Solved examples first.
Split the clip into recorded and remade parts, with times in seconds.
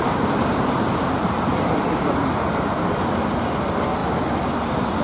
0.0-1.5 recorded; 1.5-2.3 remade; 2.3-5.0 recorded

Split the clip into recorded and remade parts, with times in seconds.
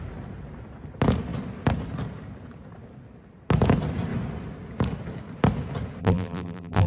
0.0-6.0 recorded; 6.0-6.9 remade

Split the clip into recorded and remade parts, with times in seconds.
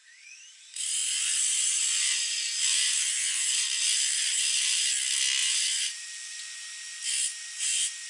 0.0-4.9 remade; 4.9-5.4 recorded; 5.4-6.3 remade; 6.3-7.3 recorded; 7.3-8.1 remade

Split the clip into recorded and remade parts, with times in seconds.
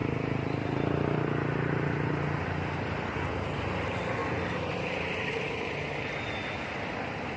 0.0-4.2 recorded; 4.2-5.3 remade; 5.3-7.4 recorded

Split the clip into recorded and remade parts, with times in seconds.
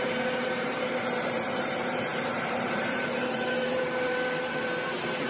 0.0-5.3 remade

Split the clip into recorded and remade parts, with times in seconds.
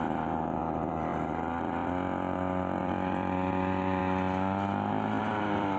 0.0-4.0 remade; 4.0-5.2 recorded; 5.2-5.8 remade